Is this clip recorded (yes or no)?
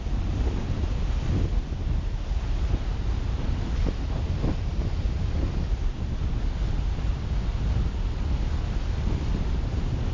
yes